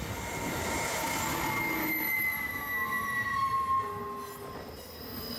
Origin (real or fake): real